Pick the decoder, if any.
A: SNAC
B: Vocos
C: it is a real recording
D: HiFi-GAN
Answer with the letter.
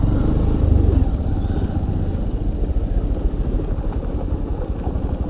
C